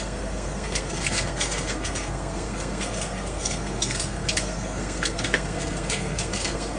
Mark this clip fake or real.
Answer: fake